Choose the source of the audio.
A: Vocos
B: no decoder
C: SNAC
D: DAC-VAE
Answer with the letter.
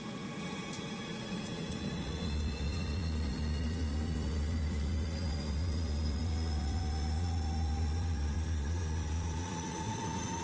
A